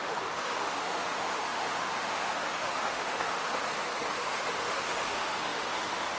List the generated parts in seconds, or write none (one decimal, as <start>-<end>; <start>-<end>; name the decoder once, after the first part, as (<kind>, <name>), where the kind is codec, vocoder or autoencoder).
0.0-3.5 (autoencoder, DAC-VAE); 4.2-6.2